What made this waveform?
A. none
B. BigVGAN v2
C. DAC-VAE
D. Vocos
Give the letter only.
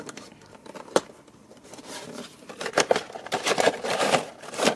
B